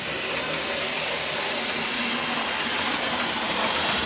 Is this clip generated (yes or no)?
no